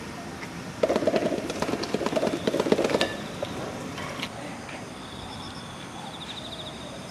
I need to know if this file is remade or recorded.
recorded